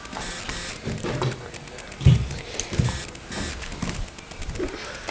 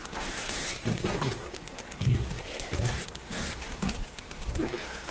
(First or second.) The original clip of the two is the first